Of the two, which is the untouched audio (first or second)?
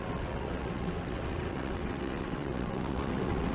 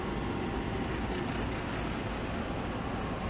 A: second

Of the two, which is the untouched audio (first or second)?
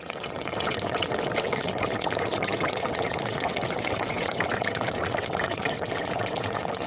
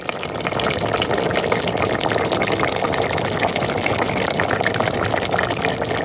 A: second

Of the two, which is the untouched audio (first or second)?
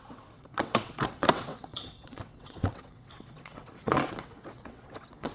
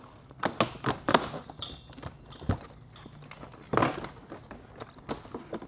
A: second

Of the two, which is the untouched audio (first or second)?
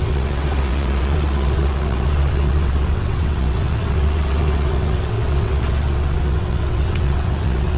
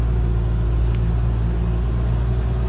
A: second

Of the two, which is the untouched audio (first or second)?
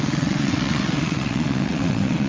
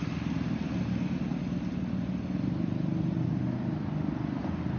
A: second